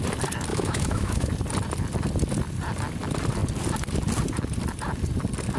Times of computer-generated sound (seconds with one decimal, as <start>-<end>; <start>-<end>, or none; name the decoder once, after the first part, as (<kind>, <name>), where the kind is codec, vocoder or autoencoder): 0.5-1.3 (autoencoder, DAC-VAE)